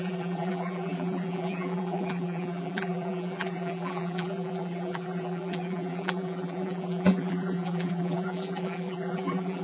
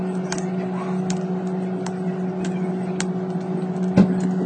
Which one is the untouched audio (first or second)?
second